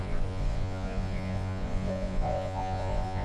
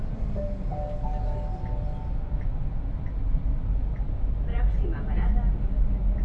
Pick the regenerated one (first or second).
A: first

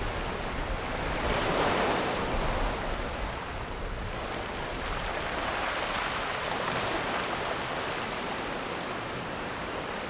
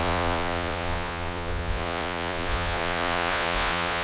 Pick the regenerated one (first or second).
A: second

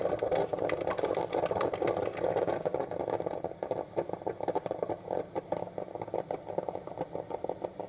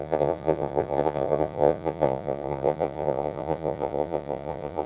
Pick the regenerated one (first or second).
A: second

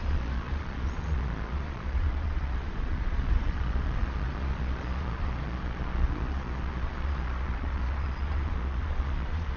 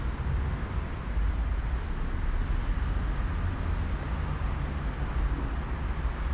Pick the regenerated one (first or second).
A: first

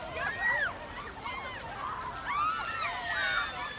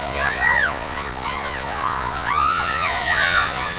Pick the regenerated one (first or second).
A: second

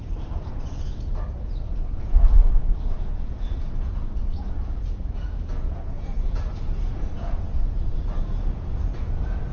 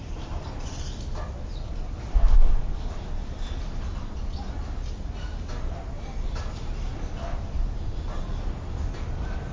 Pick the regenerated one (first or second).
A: first